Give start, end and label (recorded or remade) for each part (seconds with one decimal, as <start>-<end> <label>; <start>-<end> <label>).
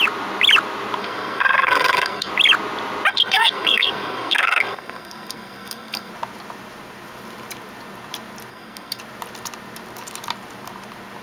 0.0-1.0 recorded; 1.0-2.3 remade; 2.3-3.1 recorded; 3.1-6.1 remade; 6.1-8.5 recorded; 8.5-9.0 remade; 9.0-11.2 recorded